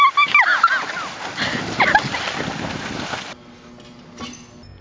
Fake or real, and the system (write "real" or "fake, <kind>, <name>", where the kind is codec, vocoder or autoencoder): real